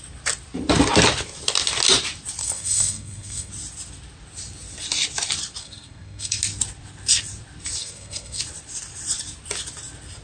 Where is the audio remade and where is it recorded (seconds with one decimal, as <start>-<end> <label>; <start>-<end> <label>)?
0.0-2.4 recorded; 2.4-3.5 remade; 3.5-5.6 recorded; 5.6-6.4 remade; 6.4-7.8 recorded; 7.8-8.4 remade; 8.4-10.2 recorded